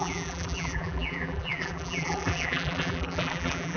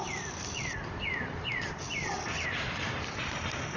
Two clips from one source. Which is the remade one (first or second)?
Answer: first